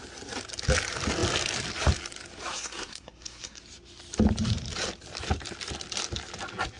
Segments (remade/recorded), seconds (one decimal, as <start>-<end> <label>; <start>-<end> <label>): 0.0-2.5 recorded; 2.5-3.6 remade; 3.6-6.8 recorded